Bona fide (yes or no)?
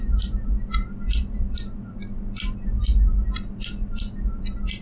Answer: no